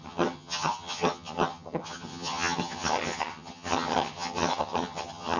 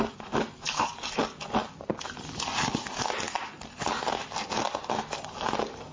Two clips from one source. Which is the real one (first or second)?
second